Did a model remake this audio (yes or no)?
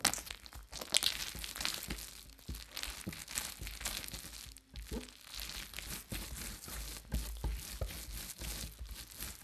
no